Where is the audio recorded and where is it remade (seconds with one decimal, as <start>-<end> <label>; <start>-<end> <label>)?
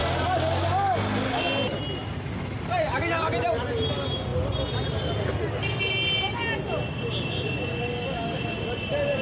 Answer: 0.0-9.2 recorded